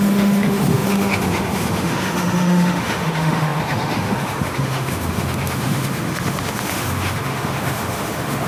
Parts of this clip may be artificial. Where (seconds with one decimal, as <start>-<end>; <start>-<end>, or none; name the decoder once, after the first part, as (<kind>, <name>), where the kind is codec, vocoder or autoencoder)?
0.0-8.5 (autoencoder, DAC-VAE)